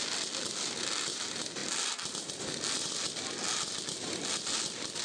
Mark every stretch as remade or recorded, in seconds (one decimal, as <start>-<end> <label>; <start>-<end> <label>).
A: 0.0-5.0 recorded